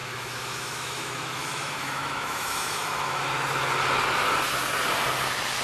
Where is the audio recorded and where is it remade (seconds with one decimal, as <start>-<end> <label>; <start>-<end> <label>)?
0.0-3.2 remade; 3.2-5.6 recorded